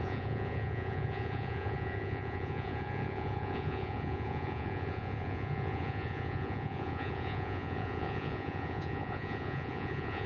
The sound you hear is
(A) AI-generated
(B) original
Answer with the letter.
A